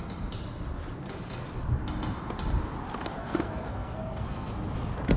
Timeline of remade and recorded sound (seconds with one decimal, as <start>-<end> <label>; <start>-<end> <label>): 0.0-3.2 recorded; 3.2-4.5 remade; 4.5-5.2 recorded